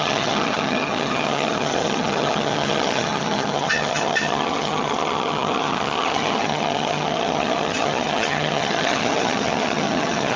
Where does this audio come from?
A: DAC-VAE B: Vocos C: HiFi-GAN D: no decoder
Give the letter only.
C